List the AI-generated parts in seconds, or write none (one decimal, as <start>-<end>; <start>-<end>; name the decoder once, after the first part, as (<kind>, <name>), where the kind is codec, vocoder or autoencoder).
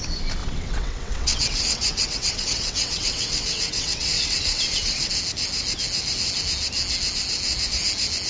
0.4-5.1 (vocoder, WaveNeXt)